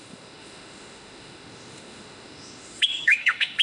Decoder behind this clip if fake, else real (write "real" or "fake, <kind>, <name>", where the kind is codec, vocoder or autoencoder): fake, autoencoder, DAC-VAE